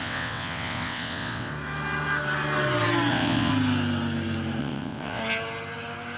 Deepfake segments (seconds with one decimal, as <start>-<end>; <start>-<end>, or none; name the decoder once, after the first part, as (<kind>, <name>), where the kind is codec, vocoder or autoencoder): 0.0-1.5 (vocoder, WaveNeXt); 3.1-3.5; 4.6-5.2